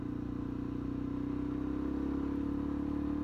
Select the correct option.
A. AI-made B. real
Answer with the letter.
B